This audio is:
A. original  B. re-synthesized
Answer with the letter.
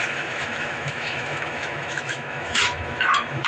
B